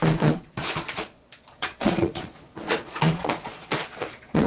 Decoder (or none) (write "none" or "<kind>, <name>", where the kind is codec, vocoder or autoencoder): vocoder, Vocos